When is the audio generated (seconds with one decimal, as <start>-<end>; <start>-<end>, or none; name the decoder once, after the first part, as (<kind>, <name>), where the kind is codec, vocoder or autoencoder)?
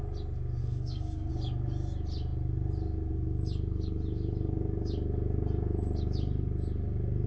0.6-1.3 (codec, SNAC)